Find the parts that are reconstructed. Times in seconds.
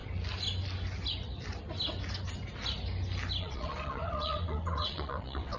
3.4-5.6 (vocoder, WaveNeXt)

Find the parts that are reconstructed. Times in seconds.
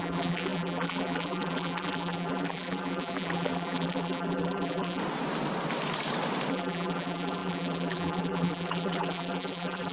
0.0-5.0 (vocoder, BigVGAN v2); 6.5-9.9